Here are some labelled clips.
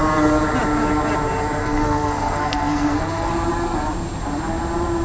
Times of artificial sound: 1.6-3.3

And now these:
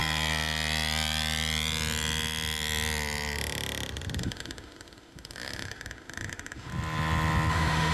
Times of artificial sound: 4.2-6.7; 7.5-7.9

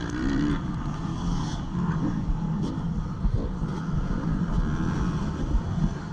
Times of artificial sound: 1.1-2.7